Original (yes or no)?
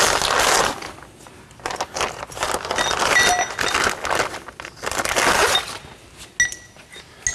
yes